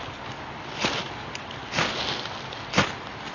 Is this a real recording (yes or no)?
yes